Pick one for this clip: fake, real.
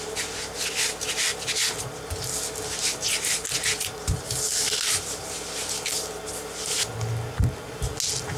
real